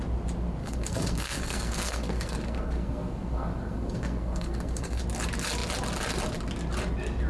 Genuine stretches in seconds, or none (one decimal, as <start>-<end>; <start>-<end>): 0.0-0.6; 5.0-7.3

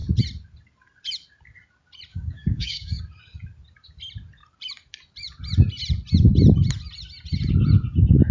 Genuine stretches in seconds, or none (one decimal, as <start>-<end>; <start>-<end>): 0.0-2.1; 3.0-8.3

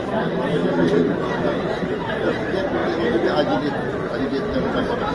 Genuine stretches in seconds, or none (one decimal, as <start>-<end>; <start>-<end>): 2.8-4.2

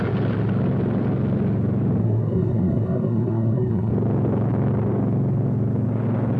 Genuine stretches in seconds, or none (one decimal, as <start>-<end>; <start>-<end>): 0.0-2.0; 3.9-6.4

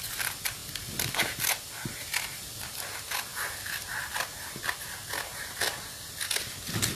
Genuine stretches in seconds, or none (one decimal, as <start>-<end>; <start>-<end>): 0.0-6.9